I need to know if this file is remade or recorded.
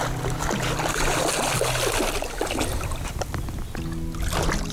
recorded